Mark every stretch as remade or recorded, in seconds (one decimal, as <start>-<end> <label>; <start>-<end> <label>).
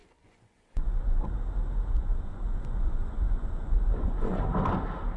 0.0-1.3 remade; 1.3-1.9 recorded; 1.9-4.4 remade; 4.4-5.2 recorded